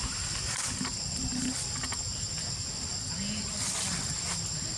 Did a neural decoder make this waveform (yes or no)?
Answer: no